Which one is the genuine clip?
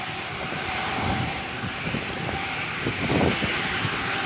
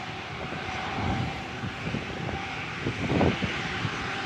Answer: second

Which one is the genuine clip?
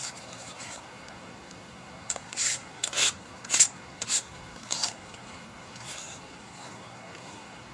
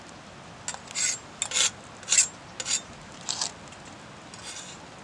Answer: second